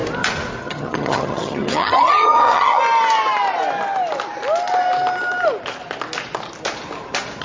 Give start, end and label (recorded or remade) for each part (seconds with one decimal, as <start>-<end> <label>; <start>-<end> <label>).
0.0-0.6 recorded; 0.6-2.8 remade; 2.8-7.4 recorded